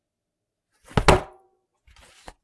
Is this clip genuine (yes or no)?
yes